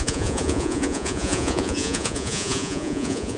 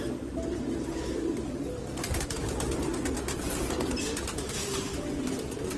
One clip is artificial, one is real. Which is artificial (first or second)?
first